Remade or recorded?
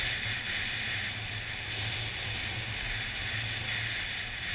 recorded